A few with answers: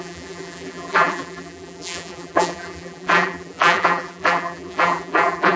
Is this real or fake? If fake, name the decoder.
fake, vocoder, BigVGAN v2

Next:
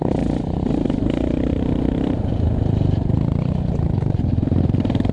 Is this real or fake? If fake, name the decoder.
fake, vocoder, BigVGAN v2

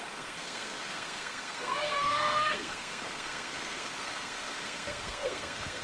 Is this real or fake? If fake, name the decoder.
fake, codec, SNAC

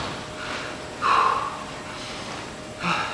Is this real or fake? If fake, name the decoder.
real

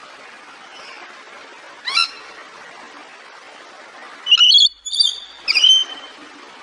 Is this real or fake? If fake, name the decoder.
real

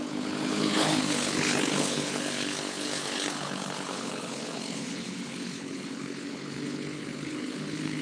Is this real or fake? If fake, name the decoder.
fake, codec, HILCodec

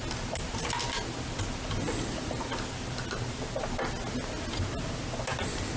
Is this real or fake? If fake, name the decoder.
real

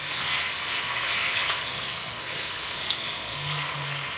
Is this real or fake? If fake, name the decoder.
fake, codec, SNAC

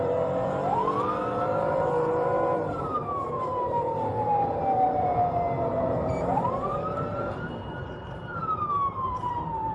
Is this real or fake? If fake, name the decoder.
fake, vocoder, BigVGAN v2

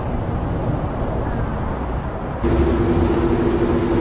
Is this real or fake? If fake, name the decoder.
real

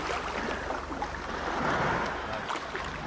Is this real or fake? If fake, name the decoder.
real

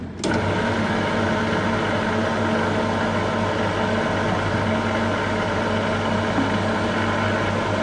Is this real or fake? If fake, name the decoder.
real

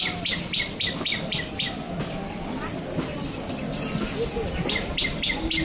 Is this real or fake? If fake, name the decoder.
real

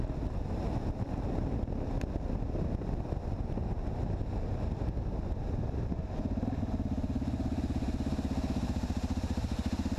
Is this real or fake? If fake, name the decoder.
real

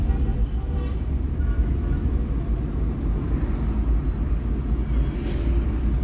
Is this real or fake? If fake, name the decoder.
real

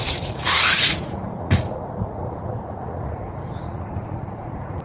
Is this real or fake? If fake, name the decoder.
fake, vocoder, Vocos